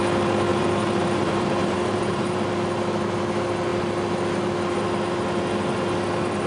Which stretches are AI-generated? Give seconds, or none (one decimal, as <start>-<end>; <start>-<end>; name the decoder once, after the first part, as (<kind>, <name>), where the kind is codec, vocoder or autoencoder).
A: 0.5-2.5 (vocoder, BigVGAN v2)